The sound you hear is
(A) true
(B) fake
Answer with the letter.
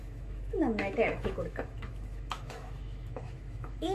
B